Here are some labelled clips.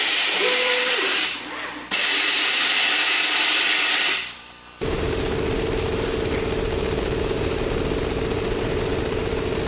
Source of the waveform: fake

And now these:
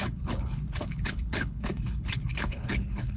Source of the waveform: fake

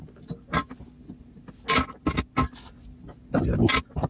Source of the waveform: real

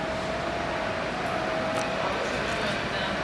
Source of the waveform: real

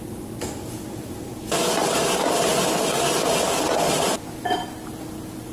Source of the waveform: real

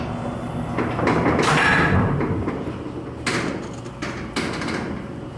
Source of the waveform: real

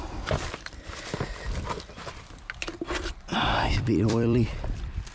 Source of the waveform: fake